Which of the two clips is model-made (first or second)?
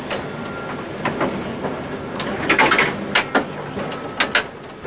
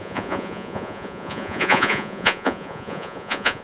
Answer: second